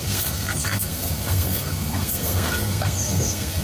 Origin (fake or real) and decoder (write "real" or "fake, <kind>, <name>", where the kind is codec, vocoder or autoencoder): fake, codec, SNAC